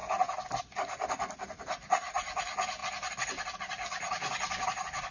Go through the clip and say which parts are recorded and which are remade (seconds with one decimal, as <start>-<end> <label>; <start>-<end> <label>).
0.0-5.1 recorded